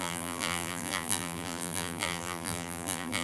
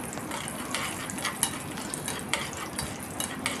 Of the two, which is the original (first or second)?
second